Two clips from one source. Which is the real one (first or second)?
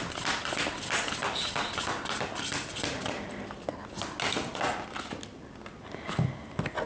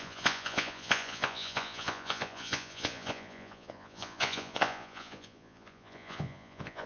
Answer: first